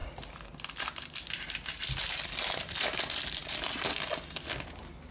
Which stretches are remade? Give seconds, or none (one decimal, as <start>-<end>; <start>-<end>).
none